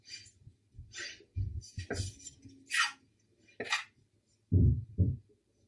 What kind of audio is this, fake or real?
real